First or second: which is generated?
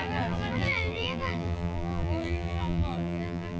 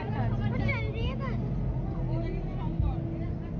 first